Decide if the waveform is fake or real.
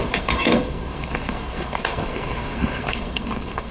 fake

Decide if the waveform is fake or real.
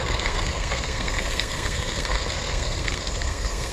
fake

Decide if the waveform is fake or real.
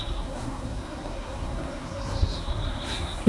fake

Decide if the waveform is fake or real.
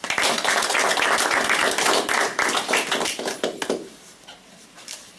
real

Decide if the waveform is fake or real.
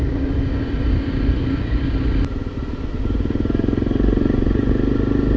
real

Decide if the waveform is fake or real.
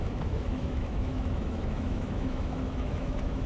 fake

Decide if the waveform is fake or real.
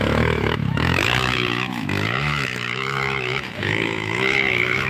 fake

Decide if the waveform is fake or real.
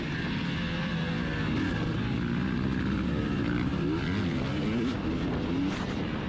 real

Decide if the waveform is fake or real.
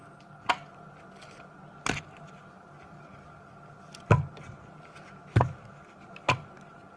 real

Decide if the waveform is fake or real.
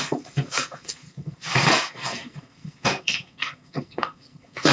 fake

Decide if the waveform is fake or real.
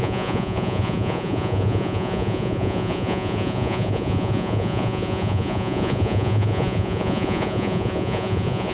fake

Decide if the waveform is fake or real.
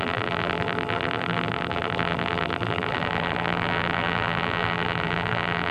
fake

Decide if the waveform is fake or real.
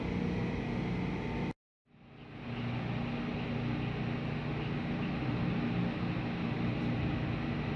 real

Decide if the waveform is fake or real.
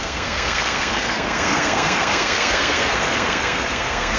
fake